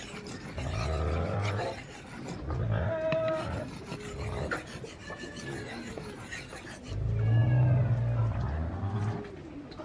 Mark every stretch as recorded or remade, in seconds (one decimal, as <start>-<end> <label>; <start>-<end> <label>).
0.0-9.8 recorded